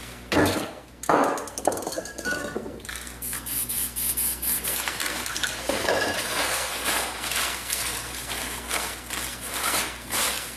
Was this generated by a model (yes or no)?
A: yes